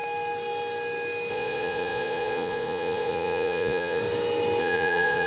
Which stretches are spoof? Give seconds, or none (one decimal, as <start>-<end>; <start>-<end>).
1.3-4.0; 4.6-5.3